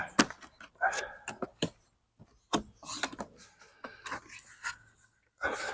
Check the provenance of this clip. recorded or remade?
recorded